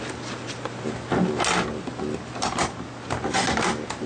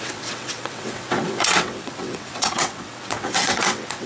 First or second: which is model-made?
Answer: second